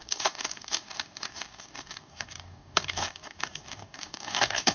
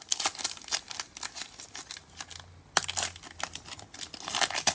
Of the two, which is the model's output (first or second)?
first